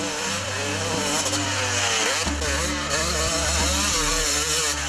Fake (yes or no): no